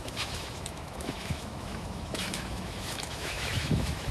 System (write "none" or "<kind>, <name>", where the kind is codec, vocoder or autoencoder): autoencoder, DAC-VAE